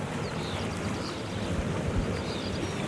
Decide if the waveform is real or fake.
real